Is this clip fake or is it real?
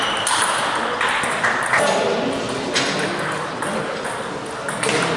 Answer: real